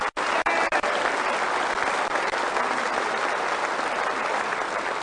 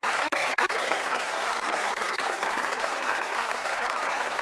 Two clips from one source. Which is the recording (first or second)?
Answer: first